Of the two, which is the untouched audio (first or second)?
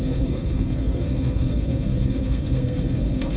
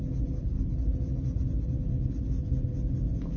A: second